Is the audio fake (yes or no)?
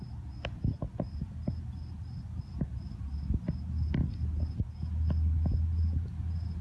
no